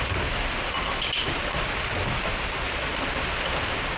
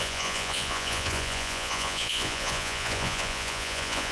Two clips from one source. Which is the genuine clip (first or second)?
first